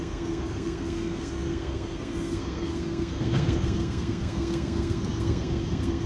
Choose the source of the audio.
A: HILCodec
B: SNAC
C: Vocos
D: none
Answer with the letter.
B